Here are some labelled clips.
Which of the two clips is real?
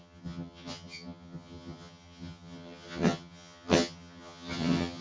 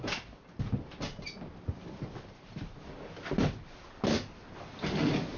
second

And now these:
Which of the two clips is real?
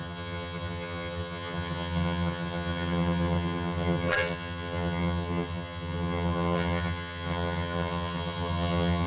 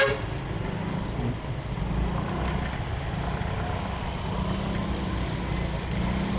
second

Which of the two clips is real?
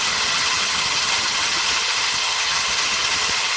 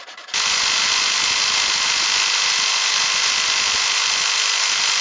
second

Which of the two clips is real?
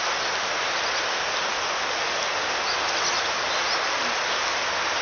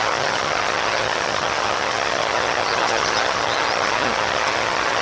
first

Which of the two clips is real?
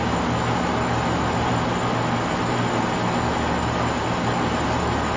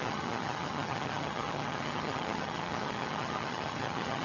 first